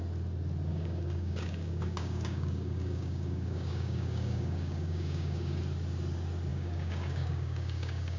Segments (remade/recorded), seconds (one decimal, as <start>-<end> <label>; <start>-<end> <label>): 0.0-0.7 recorded; 0.7-5.6 remade; 5.6-6.5 recorded; 6.5-8.2 remade